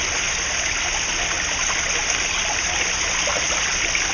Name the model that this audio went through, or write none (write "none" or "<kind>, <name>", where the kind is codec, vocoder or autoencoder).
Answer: none